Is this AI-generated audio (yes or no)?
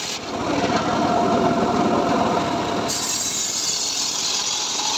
no